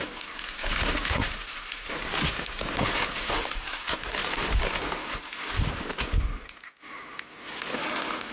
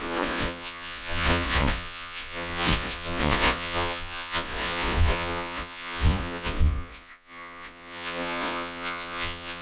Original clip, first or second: first